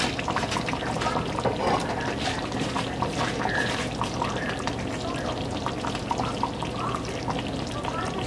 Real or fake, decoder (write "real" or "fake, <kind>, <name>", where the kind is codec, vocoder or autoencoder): real